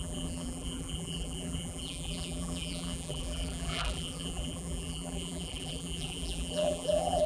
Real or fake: fake